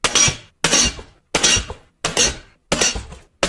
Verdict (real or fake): real